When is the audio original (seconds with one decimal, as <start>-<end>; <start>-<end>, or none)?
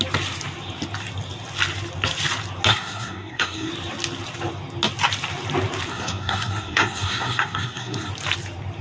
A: 0.0-2.7; 3.7-5.9; 8.1-8.8